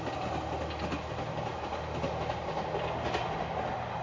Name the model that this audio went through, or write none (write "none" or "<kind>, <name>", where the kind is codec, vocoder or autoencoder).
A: none